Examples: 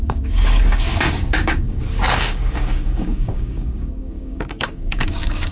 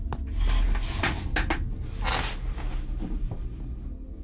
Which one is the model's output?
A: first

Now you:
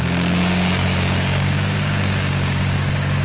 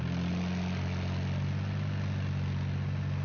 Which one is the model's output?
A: first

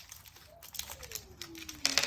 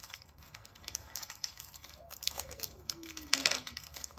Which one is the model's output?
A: second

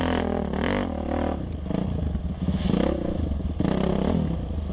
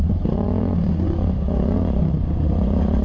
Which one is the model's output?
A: second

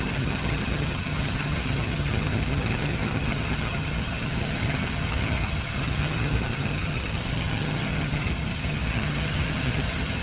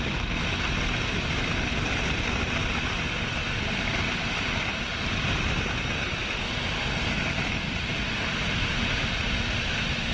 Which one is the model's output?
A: first